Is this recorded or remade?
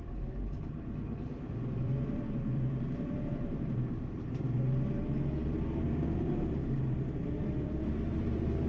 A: remade